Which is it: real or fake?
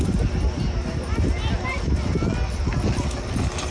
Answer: real